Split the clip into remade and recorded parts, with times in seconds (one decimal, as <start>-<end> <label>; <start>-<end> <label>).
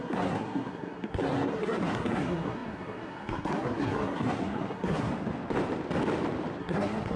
0.0-5.1 remade; 5.1-6.6 recorded; 6.6-7.2 remade